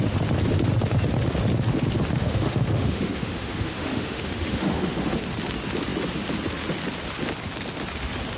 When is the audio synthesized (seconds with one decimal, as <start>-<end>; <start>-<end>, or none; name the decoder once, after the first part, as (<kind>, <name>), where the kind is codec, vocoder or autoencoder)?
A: 2.1-5.2 (autoencoder, DAC-VAE)